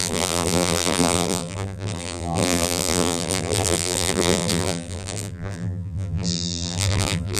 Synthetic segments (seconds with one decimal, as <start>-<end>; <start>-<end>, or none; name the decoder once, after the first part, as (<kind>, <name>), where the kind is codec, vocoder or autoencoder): 0.0-7.4 (vocoder, BigVGAN v2)